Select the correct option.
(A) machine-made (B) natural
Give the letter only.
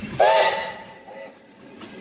B